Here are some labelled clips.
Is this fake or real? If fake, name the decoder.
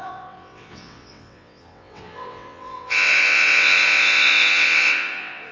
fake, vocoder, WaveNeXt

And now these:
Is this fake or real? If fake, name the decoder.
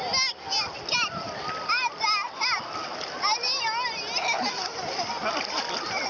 real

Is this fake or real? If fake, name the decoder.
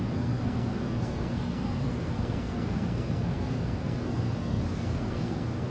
fake, codec, SNAC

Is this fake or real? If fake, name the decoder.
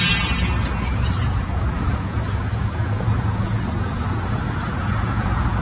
fake, vocoder, Vocos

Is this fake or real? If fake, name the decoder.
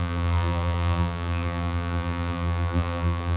fake, vocoder, BigVGAN v2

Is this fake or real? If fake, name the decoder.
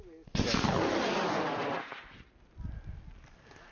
real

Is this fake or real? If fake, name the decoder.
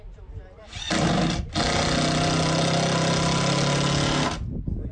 real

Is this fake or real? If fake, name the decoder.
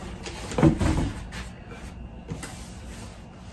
real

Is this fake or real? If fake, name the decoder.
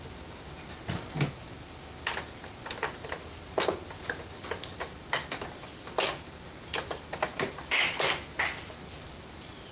real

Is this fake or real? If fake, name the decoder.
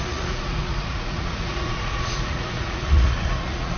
fake, vocoder, Vocos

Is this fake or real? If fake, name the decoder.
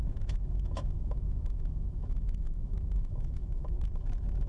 fake, autoencoder, DAC-VAE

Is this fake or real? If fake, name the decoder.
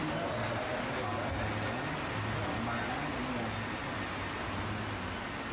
real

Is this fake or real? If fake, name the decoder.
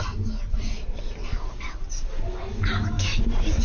real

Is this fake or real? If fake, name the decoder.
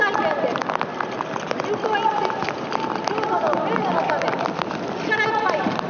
real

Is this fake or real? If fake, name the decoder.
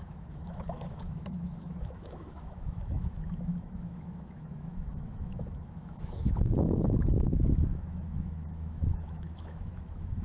fake, autoencoder, DAC-VAE